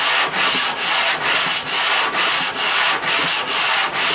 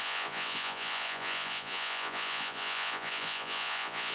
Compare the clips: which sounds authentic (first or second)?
first